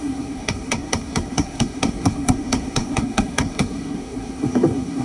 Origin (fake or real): fake